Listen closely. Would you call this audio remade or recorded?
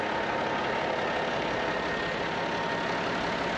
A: recorded